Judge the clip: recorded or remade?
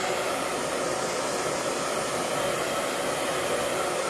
recorded